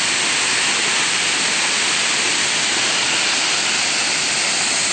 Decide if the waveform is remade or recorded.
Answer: recorded